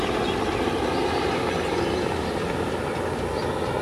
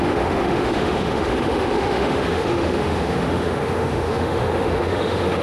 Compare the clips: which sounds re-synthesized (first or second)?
second